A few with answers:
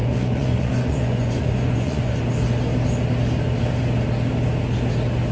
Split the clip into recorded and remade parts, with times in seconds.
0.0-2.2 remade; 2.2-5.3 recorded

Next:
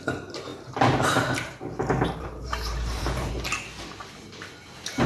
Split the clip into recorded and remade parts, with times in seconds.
0.0-0.5 recorded; 0.5-3.3 remade; 3.3-5.1 recorded